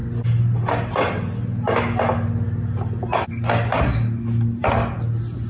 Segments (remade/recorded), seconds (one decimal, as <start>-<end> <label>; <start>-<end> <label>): 0.0-5.5 recorded